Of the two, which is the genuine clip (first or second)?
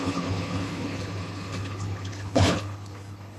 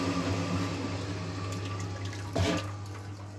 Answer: second